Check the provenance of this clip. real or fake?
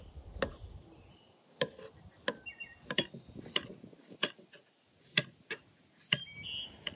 real